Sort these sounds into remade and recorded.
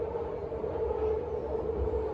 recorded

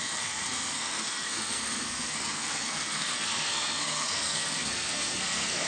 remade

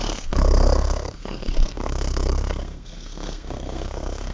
remade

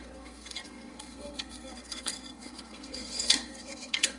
remade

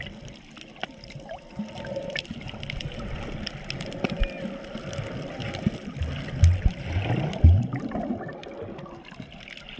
recorded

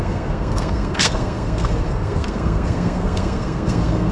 remade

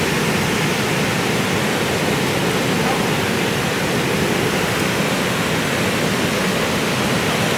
recorded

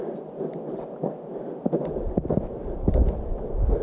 recorded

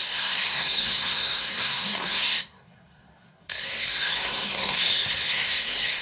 remade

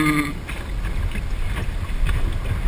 recorded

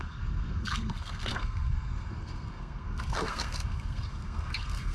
remade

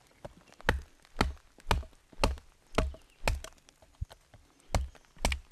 recorded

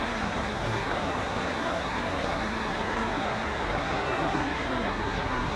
remade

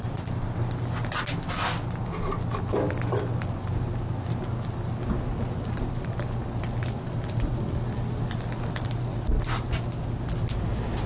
recorded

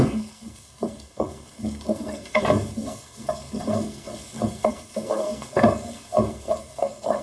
remade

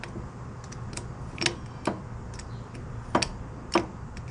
recorded